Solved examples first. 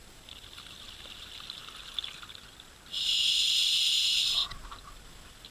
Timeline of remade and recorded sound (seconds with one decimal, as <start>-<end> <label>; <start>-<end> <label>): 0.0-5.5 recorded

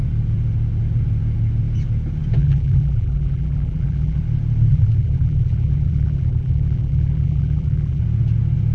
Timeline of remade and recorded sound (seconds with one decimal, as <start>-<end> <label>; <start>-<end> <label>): 0.0-2.4 recorded; 2.4-4.2 remade; 4.2-4.7 recorded; 4.7-8.0 remade; 8.0-8.7 recorded

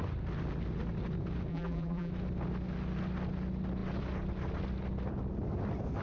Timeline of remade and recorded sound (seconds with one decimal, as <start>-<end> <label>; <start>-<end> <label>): 0.0-1.5 recorded; 1.5-2.1 remade; 2.1-6.0 recorded

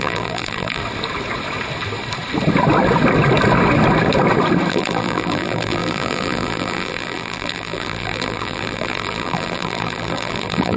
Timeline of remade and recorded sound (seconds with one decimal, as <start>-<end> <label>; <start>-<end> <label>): 0.0-0.8 remade; 0.8-4.7 recorded; 4.7-10.8 remade

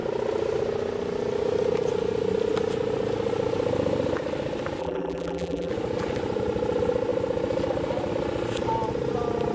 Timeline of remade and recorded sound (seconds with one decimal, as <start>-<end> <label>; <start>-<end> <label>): 0.0-4.8 recorded; 4.8-5.7 remade; 5.7-9.5 recorded

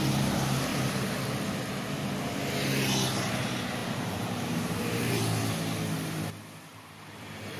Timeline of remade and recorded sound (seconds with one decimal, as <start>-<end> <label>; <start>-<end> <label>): 0.0-0.7 recorded; 0.7-1.2 remade; 1.2-3.8 recorded; 3.8-5.2 remade; 5.2-6.7 recorded; 6.7-7.6 remade

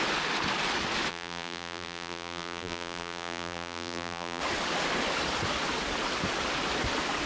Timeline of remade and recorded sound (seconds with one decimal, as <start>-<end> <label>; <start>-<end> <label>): 0.0-1.1 recorded; 1.1-4.4 remade; 4.4-7.3 recorded

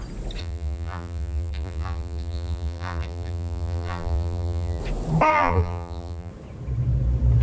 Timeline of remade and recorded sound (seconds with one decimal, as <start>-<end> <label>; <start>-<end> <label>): 0.0-0.4 recorded; 0.4-4.8 remade; 4.8-5.3 recorded; 5.3-6.3 remade; 6.3-7.4 recorded